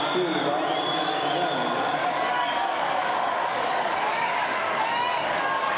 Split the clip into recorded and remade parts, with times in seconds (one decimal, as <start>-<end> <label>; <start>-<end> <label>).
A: 0.0-2.0 recorded; 2.0-5.8 remade